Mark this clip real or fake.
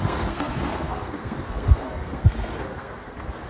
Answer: fake